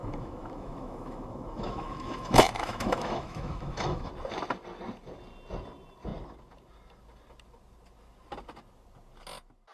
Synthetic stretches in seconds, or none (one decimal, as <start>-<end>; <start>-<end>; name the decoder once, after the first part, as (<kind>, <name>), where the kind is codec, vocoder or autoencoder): 0.0-4.1 (autoencoder, DAC-VAE)